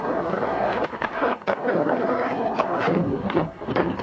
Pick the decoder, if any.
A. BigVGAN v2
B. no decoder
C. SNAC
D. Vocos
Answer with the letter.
C